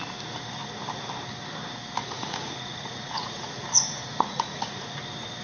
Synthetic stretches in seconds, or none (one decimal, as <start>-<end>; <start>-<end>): 2.0-5.0